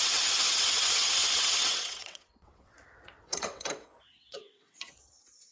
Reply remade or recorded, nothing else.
remade